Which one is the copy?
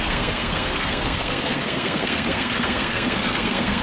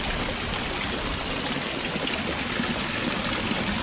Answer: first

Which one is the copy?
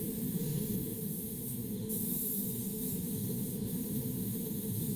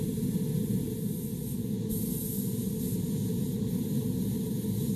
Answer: first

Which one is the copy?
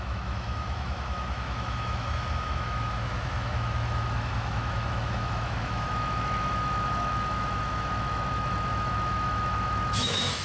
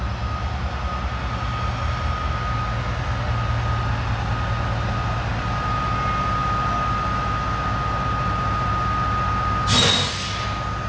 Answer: first